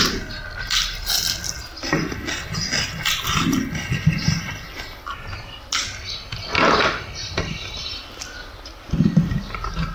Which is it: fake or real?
real